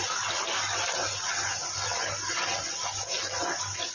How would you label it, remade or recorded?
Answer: recorded